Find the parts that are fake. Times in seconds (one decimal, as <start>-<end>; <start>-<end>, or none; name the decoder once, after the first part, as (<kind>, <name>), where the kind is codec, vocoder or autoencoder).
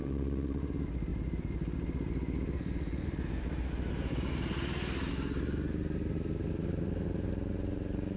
0.0-0.6 (vocoder, WaveNeXt)